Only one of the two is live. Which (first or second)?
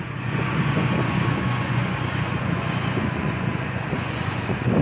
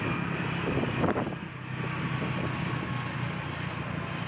second